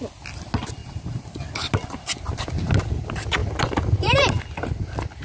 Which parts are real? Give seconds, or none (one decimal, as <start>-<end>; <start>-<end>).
0.0-0.8; 1.5-3.4; 4.3-5.2